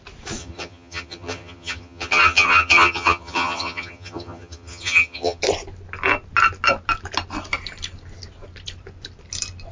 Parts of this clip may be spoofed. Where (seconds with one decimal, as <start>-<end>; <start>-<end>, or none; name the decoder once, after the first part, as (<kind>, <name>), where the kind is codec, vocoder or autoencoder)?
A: 0.4-5.4 (vocoder, HiFi-GAN)